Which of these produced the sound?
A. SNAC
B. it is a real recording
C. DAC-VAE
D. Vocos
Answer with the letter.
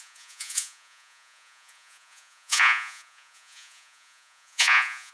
D